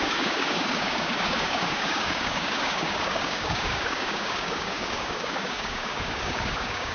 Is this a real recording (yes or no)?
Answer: no